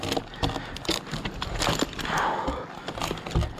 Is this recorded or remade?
recorded